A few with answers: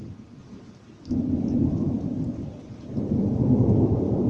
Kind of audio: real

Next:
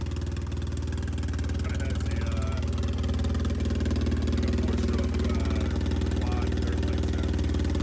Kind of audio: real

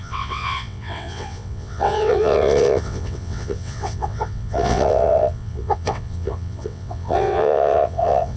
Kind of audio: fake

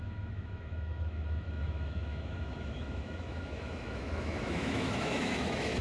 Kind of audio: fake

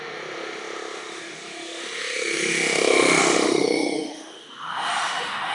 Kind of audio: fake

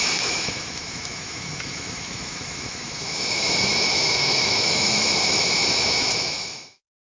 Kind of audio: fake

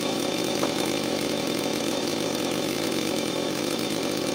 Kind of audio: fake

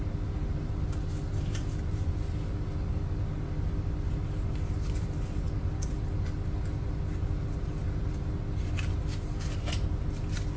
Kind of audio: real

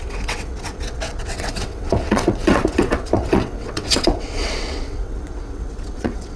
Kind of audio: fake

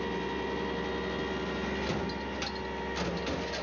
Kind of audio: real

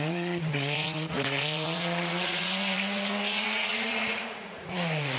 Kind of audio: fake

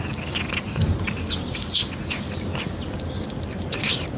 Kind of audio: real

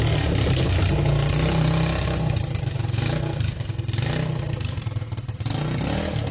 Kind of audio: real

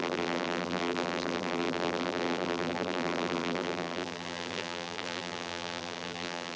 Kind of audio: fake